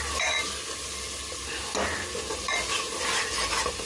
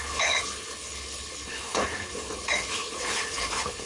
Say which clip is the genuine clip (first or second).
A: first